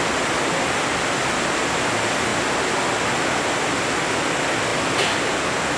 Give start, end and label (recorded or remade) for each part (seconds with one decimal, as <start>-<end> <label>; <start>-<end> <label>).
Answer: 0.0-5.8 recorded